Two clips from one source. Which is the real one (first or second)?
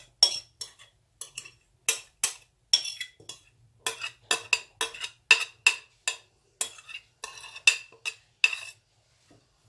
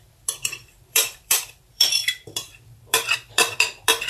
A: first